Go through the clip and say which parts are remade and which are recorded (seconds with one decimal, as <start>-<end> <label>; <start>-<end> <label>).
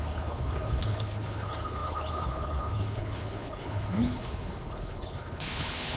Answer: 0.0-6.0 remade